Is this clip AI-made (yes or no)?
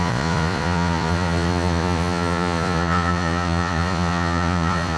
yes